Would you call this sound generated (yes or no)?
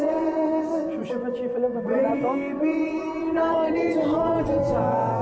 yes